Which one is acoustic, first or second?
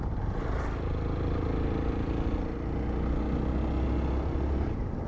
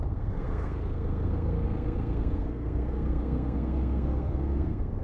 first